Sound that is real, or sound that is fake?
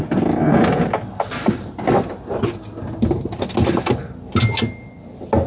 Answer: real